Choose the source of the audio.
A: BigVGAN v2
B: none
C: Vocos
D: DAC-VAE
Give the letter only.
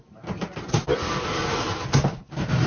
A